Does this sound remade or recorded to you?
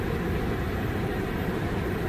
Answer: recorded